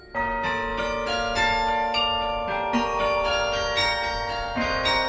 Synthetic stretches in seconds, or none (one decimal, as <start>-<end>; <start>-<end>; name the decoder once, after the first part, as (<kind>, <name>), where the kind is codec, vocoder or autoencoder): none